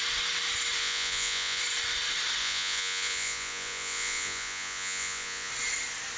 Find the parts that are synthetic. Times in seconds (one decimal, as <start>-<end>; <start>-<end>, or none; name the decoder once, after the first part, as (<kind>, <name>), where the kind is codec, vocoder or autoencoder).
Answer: 0.8-1.6 (vocoder, Vocos); 2.4-5.5